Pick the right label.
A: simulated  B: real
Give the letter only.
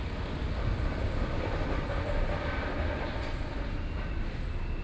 B